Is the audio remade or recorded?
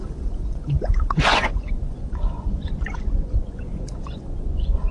remade